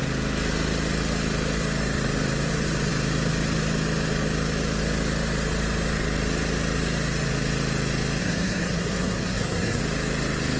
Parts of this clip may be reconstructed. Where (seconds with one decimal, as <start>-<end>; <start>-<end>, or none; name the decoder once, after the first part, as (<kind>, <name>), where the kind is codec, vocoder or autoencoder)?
8.2-9.8 (codec, SNAC)